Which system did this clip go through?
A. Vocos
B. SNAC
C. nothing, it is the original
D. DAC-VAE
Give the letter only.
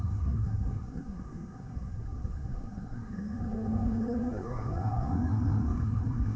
B